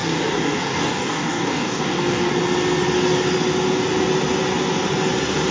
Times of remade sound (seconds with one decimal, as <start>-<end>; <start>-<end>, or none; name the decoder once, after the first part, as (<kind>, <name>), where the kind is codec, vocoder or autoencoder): 0.0-2.3 (codec, DAC)